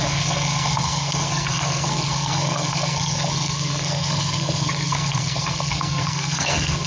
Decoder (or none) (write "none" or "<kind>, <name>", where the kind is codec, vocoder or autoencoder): codec, SNAC